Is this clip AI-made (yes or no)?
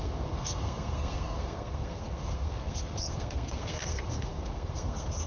yes